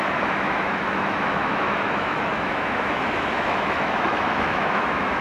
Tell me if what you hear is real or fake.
fake